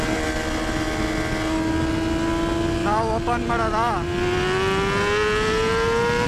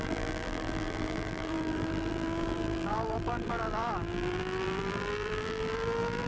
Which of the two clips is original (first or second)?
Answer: first